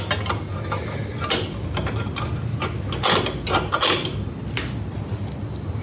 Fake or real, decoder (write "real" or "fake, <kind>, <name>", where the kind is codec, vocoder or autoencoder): real